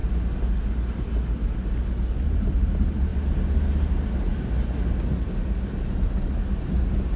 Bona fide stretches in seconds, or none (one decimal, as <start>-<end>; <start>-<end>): 0.0-7.2